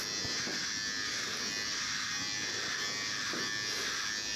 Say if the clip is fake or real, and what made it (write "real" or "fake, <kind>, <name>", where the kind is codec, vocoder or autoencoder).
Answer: real